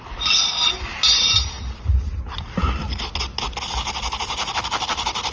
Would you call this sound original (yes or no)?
yes